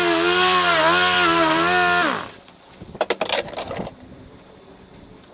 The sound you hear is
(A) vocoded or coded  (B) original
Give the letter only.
B